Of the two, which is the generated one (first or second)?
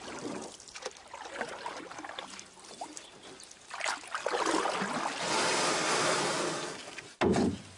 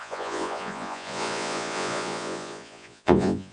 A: second